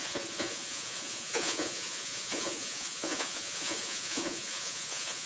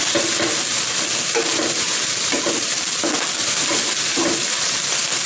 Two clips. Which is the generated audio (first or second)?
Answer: first